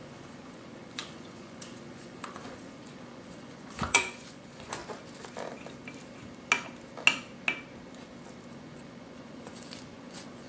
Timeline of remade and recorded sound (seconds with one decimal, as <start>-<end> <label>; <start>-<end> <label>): 0.0-4.8 remade; 4.8-8.5 recorded; 8.5-10.5 remade